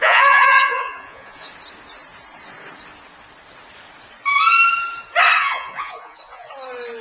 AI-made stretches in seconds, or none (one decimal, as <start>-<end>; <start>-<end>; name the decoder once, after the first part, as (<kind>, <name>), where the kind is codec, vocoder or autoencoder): 0.0-1.5 (vocoder, Vocos); 5.4-6.5